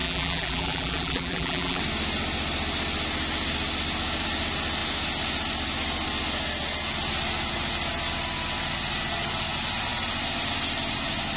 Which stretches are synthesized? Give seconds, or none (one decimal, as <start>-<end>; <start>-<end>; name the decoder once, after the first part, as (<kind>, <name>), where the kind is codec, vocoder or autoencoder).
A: 0.0-1.8 (vocoder, BigVGAN v2)